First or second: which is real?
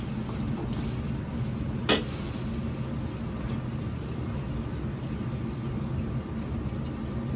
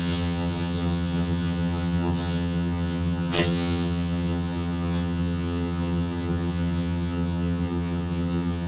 first